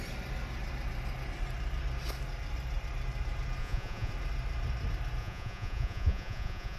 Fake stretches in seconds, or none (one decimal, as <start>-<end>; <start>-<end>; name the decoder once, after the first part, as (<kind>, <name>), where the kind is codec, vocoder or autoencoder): 3.6-4.1 (vocoder, Vocos); 5.2-6.8